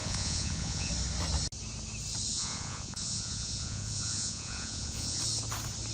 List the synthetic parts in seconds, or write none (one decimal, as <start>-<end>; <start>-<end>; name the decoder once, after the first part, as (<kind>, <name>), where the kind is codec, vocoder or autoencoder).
0.0-0.9 (vocoder, Vocos); 2.3-5.2